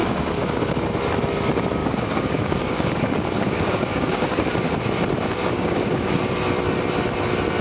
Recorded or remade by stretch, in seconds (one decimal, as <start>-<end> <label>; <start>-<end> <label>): 0.0-0.6 remade; 0.6-1.8 recorded; 1.8-4.7 remade; 4.7-5.4 recorded; 5.4-6.2 remade; 6.2-7.6 recorded